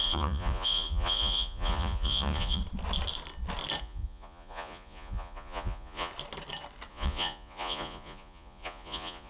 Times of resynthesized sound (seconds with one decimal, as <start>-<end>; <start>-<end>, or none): 0.0-2.6; 3.8-6.1; 6.9-9.3